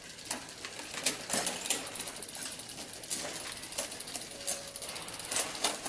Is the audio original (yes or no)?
yes